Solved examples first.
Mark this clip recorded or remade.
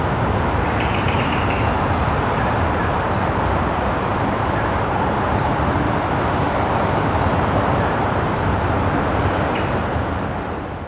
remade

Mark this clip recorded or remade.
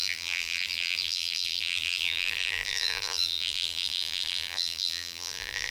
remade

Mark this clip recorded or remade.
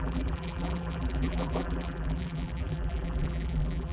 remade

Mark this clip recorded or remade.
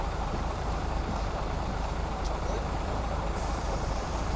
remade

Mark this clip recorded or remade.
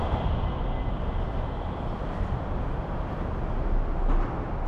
recorded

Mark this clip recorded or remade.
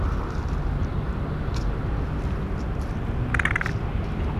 recorded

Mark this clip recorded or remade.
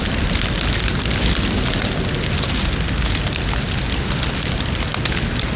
recorded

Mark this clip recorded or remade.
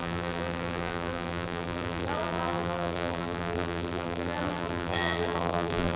remade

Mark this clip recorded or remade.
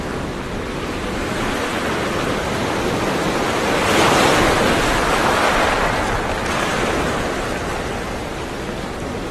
recorded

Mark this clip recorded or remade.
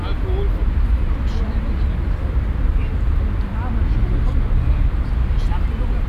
recorded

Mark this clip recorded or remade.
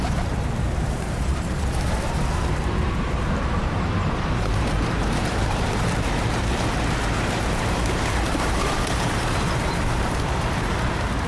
remade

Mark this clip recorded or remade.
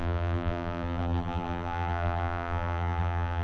remade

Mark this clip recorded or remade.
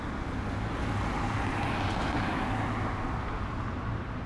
recorded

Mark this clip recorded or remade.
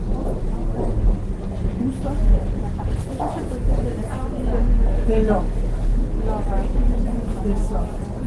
recorded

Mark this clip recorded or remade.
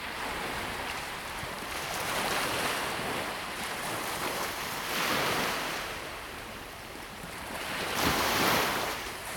remade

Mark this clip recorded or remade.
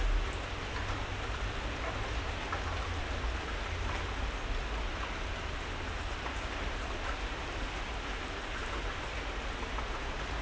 recorded